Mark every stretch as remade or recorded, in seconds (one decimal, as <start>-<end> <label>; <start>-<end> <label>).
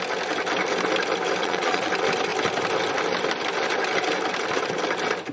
0.0-1.4 recorded; 1.4-1.9 remade; 1.9-5.3 recorded